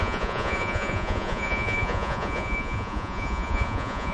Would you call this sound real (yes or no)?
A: no